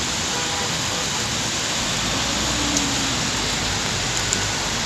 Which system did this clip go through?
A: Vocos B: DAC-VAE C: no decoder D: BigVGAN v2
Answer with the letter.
C